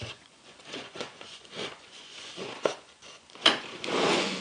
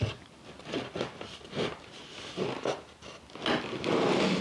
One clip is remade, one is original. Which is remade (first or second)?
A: first